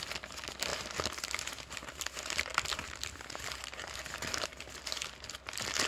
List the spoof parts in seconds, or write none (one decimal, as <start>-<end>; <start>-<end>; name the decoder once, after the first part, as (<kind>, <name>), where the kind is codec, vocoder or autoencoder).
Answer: none